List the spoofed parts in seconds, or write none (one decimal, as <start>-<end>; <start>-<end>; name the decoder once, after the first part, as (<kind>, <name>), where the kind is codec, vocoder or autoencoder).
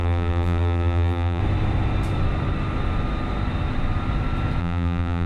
0.0-1.4 (vocoder, BigVGAN v2); 4.6-5.3